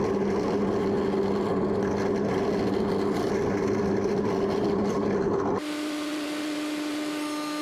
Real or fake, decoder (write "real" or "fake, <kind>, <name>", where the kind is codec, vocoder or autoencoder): real